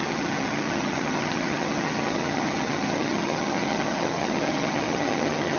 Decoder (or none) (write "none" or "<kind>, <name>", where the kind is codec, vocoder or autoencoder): vocoder, HiFi-GAN